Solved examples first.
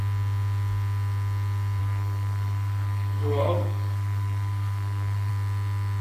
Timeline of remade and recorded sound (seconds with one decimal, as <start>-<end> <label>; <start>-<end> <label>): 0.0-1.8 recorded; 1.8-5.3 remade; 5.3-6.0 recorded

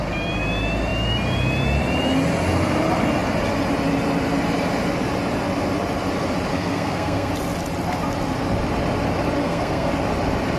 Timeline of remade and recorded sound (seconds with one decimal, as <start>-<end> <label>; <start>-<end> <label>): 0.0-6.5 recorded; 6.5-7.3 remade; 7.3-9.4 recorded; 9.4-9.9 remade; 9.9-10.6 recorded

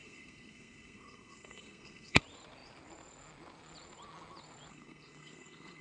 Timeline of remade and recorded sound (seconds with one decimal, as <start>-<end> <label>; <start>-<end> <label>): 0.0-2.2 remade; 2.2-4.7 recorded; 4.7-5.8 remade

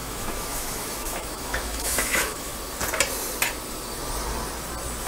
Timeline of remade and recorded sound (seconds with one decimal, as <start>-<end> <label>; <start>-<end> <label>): 0.0-2.5 remade; 2.5-5.1 recorded

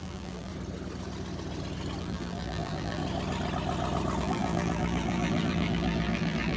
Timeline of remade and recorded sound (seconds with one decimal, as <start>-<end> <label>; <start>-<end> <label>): 0.0-0.5 remade; 0.5-2.0 recorded; 2.0-3.0 remade; 3.0-4.2 recorded; 4.2-6.6 remade

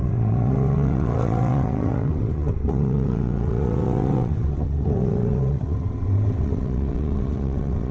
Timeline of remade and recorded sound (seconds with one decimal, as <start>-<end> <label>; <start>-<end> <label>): 0.0-7.9 remade

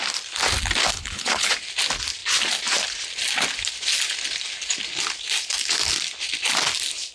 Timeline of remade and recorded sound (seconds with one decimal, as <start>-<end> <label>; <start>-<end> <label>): 0.0-0.9 recorded; 0.9-1.5 remade; 1.5-7.1 recorded

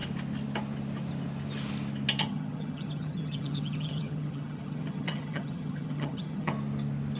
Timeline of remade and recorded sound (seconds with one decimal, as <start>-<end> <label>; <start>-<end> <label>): 0.0-2.2 recorded; 2.2-6.5 remade; 6.5-7.2 recorded